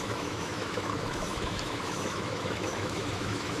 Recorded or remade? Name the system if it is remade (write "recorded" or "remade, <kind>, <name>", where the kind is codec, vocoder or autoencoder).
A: remade, autoencoder, DAC-VAE